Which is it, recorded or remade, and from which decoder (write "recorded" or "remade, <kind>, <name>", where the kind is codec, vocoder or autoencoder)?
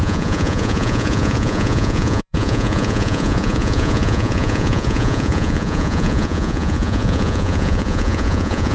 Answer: remade, vocoder, Vocos